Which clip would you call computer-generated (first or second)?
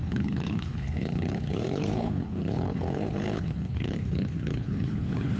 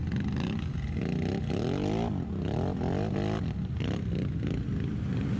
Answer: first